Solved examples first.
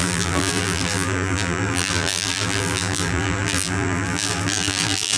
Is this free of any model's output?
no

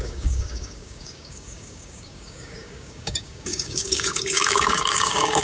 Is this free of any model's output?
no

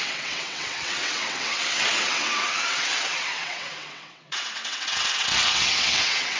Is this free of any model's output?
no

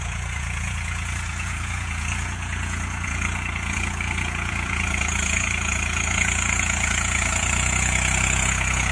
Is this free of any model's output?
no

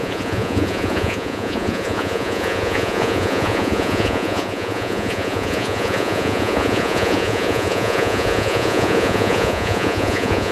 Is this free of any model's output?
no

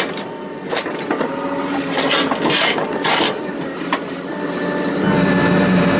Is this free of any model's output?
yes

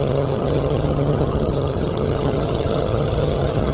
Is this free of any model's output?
no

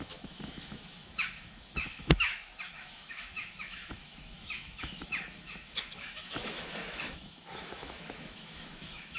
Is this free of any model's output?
no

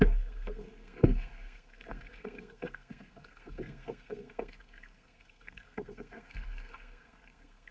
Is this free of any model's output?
no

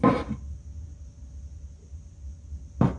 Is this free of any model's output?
yes